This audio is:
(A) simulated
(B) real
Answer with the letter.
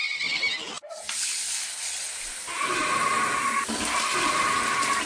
B